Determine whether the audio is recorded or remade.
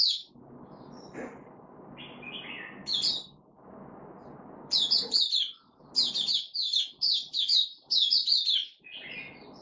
recorded